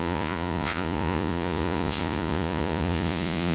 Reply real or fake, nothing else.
fake